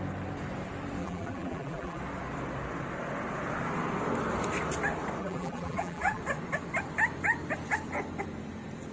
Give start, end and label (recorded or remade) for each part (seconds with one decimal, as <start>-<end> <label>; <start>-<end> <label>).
0.0-1.0 recorded; 1.0-2.0 remade; 2.0-5.2 recorded; 5.2-6.2 remade; 6.2-8.9 recorded